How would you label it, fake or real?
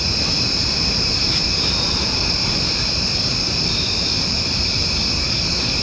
fake